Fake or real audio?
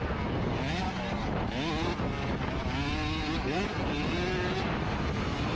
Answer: real